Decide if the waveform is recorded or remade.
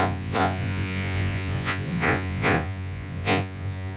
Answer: remade